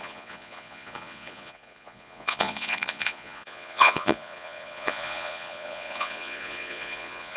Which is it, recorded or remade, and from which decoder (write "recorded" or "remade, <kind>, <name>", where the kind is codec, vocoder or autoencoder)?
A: remade, vocoder, Vocos